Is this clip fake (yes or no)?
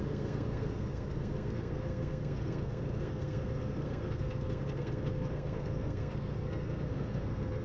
yes